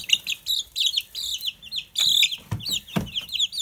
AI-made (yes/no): no